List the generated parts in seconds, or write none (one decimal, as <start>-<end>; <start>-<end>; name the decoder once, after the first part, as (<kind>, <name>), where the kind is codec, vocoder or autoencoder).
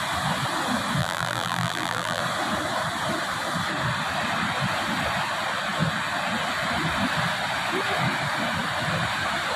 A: 1.0-2.2 (vocoder, BigVGAN v2)